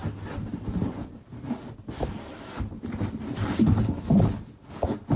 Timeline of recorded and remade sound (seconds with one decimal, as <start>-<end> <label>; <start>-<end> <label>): 0.0-5.2 recorded